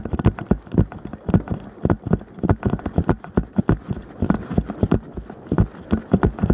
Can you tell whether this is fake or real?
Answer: real